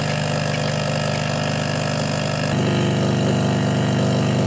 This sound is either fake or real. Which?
real